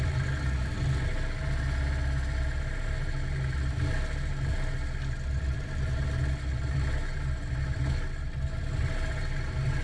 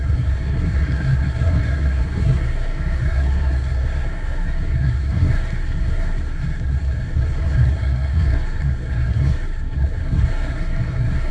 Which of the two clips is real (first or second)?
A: first